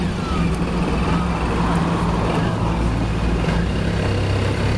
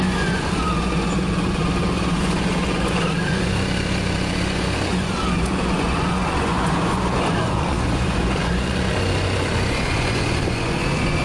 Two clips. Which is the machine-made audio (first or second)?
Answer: second